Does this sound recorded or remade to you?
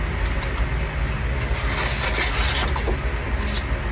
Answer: recorded